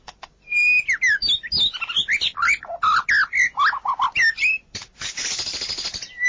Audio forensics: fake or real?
real